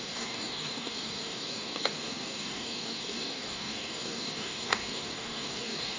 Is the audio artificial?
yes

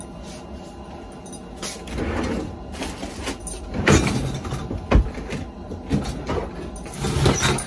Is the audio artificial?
no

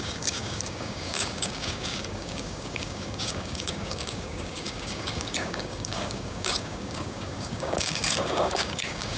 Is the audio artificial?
yes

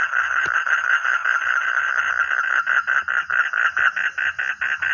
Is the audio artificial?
no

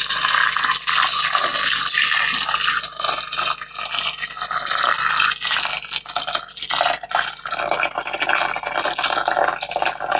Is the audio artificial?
no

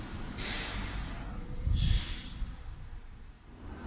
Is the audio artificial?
no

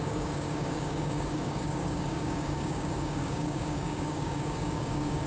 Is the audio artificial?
yes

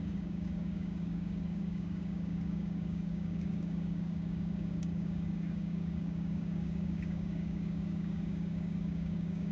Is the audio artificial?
yes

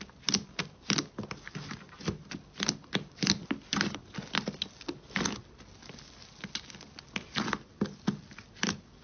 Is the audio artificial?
no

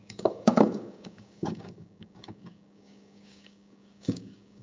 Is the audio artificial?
yes